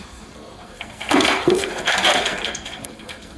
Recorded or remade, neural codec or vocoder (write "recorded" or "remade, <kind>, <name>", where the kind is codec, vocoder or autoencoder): remade, codec, SNAC